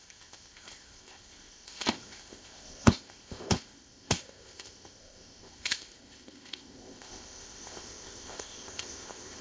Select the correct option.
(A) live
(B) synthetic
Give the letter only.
B